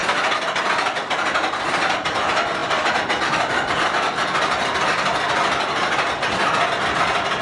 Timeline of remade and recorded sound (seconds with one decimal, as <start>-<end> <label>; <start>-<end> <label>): 0.0-7.4 recorded